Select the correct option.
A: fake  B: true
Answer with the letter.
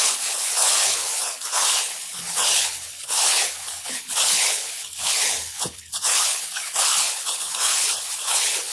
A